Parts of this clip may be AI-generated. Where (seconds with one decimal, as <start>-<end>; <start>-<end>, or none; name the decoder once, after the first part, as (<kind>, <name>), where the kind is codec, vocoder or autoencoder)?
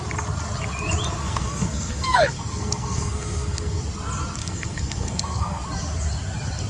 1.2-3.8 (codec, SNAC); 4.4-5.6